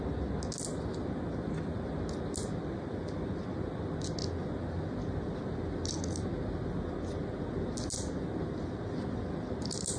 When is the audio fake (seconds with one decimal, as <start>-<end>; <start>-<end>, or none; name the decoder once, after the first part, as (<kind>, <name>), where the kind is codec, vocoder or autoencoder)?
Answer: none